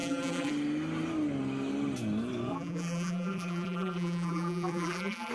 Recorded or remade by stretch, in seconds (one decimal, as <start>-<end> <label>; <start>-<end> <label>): 0.0-0.5 remade; 0.5-2.5 recorded; 2.5-5.3 remade